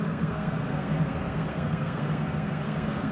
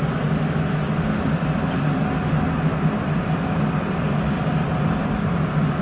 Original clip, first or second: second